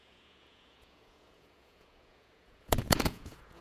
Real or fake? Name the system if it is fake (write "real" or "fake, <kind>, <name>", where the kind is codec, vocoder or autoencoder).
fake, vocoder, Vocos